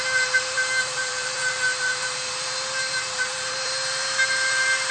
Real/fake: fake